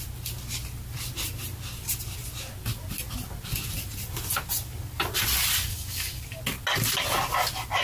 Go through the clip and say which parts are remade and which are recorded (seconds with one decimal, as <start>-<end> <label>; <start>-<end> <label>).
0.0-5.7 recorded; 5.7-6.4 remade; 6.4-7.8 recorded